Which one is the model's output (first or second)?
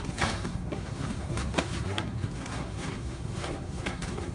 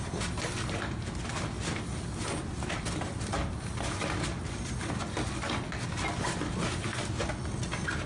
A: first